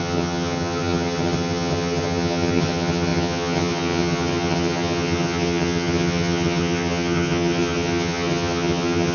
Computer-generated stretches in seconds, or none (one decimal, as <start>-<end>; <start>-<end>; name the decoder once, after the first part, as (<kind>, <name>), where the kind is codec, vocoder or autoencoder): 0.0-9.1 (vocoder, HiFi-GAN)